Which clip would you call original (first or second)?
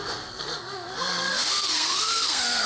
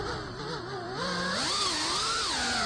second